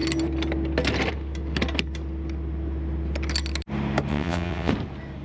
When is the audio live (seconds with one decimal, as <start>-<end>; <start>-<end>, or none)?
0.0-4.1; 4.7-5.2